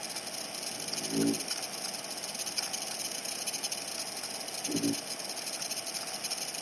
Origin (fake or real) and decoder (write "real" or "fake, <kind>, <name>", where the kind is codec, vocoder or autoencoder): real